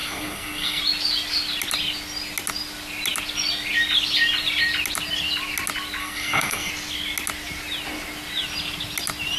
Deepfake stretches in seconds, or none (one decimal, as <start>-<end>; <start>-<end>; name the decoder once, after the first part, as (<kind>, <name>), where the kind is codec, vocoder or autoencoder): 0.0-0.8 (codec, SNAC); 6.0-6.7